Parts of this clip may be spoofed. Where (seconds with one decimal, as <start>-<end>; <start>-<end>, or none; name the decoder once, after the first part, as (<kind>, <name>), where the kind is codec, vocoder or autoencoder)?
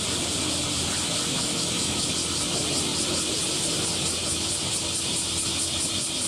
1.3-2.1 (autoencoder, DAC-VAE)